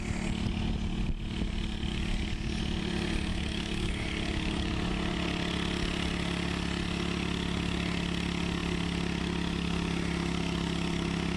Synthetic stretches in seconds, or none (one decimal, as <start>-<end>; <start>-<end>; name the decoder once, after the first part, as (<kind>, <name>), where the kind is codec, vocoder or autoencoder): 1.9-2.6 (codec, DAC); 3.3-4.9